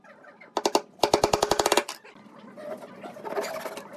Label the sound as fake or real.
real